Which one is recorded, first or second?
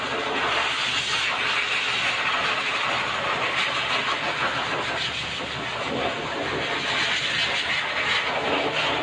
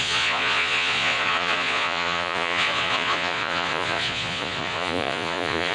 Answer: first